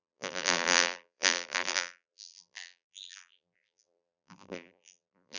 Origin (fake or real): fake